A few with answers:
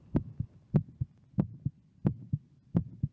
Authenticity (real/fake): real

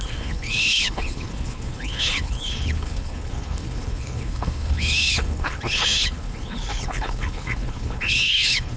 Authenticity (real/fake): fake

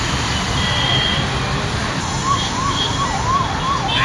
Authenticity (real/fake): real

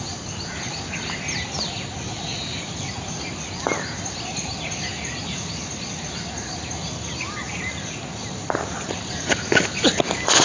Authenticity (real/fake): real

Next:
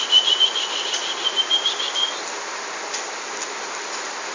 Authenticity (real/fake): real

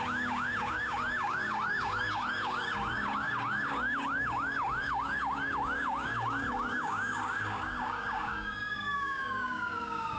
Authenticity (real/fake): fake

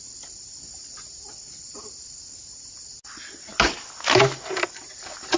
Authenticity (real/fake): real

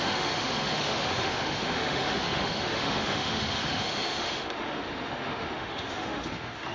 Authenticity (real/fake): fake